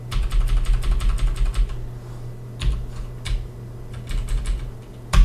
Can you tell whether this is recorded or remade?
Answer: recorded